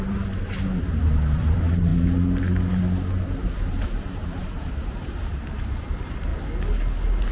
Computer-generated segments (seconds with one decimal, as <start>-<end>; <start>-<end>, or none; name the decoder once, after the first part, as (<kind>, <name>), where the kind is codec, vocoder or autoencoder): 0.0-1.9 (vocoder, BigVGAN v2); 3.4-6.3